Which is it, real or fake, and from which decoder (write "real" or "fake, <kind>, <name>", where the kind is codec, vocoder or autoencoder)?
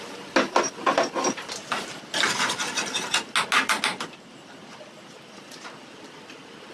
real